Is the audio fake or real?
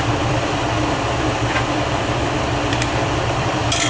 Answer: fake